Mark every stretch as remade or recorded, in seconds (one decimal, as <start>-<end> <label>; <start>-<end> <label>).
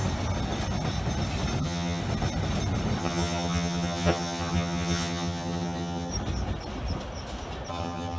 0.0-1.6 recorded; 1.6-2.0 remade; 2.0-3.0 recorded; 3.0-6.1 remade; 6.1-7.7 recorded; 7.7-8.2 remade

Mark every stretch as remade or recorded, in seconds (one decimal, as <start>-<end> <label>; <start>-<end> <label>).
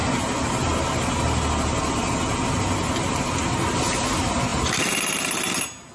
0.0-5.9 recorded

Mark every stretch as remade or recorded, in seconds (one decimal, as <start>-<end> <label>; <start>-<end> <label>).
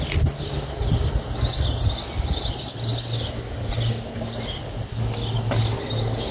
0.0-6.3 recorded